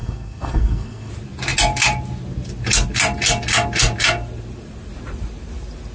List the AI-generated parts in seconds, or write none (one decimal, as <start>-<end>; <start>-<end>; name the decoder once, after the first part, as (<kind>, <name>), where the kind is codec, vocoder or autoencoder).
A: 0.0-1.1 (codec, SNAC)